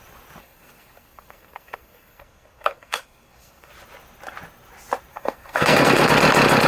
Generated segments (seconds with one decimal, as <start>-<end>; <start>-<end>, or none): 0.4-3.7; 5.1-6.1